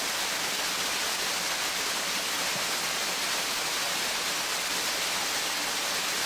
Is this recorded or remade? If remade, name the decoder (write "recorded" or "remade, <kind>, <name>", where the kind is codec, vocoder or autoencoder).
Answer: recorded